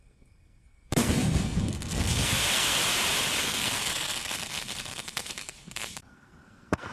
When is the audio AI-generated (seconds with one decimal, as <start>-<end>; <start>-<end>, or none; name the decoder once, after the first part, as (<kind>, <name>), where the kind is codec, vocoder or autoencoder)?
0.0-2.8 (codec, SNAC); 3.4-6.9